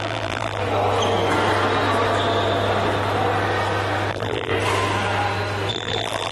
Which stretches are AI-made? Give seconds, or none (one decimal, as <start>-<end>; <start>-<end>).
0.0-0.6; 4.1-4.5; 5.7-6.3